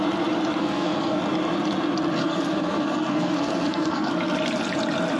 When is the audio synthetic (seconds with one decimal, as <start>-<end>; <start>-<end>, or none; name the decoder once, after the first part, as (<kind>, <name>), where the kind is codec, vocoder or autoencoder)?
0.6-1.2 (codec, SNAC); 2.2-4.1